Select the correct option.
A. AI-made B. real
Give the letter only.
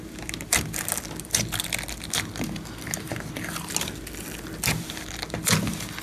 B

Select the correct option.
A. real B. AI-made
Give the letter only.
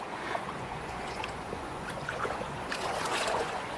B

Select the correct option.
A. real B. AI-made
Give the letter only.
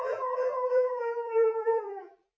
B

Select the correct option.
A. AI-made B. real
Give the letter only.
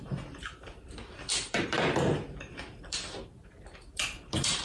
A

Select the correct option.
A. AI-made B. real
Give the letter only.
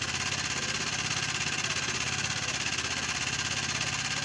B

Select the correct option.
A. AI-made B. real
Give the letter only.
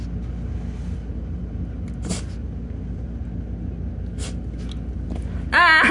B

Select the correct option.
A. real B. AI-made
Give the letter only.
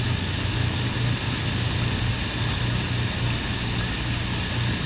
A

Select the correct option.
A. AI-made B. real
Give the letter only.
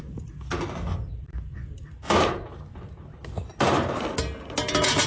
B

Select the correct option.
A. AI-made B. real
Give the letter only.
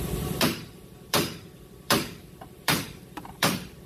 A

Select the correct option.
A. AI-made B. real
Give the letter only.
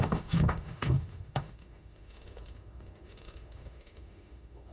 A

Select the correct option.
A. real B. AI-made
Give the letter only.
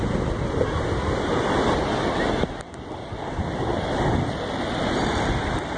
A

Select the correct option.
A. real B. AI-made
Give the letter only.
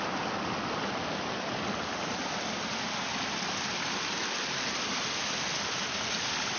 A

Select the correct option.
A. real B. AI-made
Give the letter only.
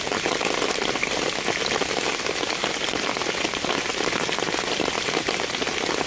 A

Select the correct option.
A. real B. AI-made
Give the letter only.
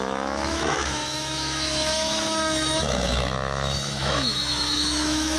B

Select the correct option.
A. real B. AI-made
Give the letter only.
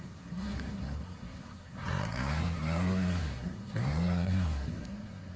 B